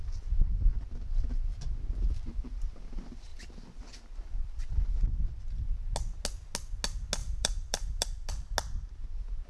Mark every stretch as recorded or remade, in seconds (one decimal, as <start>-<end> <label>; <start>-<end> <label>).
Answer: 0.0-3.3 recorded; 3.3-4.7 remade; 4.7-7.2 recorded; 7.2-8.3 remade; 8.3-9.5 recorded

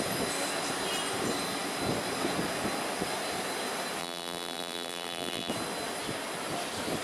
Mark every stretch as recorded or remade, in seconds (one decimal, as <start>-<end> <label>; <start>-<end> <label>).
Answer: 0.0-4.0 recorded; 4.0-5.5 remade; 5.5-7.0 recorded

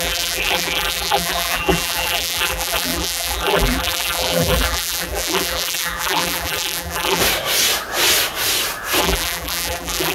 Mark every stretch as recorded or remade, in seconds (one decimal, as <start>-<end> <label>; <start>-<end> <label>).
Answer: 0.0-7.2 remade; 7.2-9.0 recorded; 9.0-10.1 remade

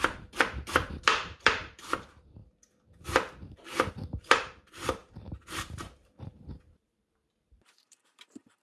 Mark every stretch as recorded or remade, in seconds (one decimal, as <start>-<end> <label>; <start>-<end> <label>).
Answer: 0.0-2.4 remade; 2.4-3.9 recorded; 3.9-8.6 remade